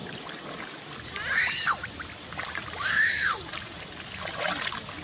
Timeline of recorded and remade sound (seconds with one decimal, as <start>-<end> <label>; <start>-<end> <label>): 0.0-5.0 recorded

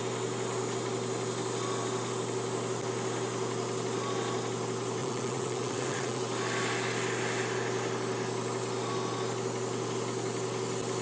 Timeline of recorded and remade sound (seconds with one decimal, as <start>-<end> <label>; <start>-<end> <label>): 0.0-5.0 recorded; 5.0-6.2 remade; 6.2-11.0 recorded

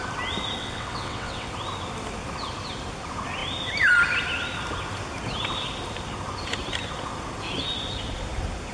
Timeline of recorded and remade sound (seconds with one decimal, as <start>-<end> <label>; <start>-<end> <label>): 0.0-0.6 recorded; 0.6-1.5 remade; 1.5-8.7 recorded

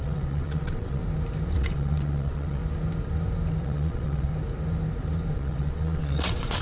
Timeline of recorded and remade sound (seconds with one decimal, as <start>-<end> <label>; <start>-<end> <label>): 0.0-1.0 remade; 1.0-1.5 recorded; 1.5-2.6 remade; 2.6-3.6 recorded; 3.6-4.3 remade; 4.3-5.3 recorded; 5.3-6.6 remade

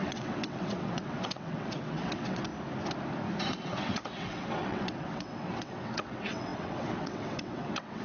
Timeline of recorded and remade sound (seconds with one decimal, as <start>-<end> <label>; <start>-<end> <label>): 0.0-2.5 remade; 2.5-3.5 recorded; 3.5-8.0 remade